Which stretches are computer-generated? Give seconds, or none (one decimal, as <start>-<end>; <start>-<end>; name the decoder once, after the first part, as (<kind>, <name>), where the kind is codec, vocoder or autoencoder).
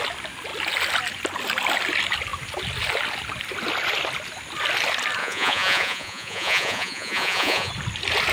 5.2-7.7 (vocoder, Vocos)